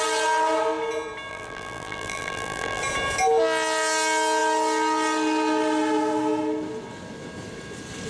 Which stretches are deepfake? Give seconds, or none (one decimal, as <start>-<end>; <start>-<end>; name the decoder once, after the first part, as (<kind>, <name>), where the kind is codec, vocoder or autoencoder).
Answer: 1.3-2.8 (vocoder, BigVGAN v2)